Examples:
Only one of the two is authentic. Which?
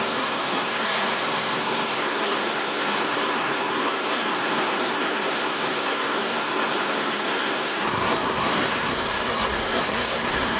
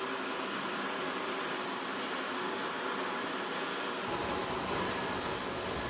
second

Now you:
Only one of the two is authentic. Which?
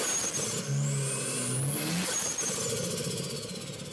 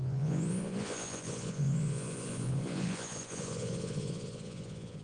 first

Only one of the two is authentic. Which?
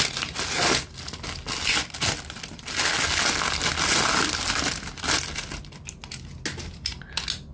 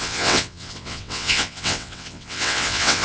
first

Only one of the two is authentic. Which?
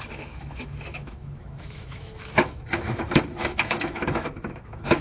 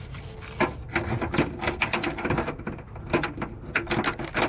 second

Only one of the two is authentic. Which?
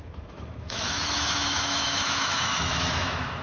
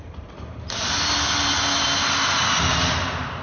second